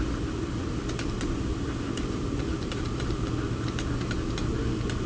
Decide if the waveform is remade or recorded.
recorded